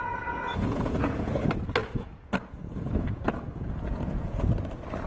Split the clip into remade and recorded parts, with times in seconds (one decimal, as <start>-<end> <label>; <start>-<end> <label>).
0.0-0.5 recorded; 0.5-1.3 remade; 1.3-1.8 recorded; 1.8-4.5 remade; 4.5-5.1 recorded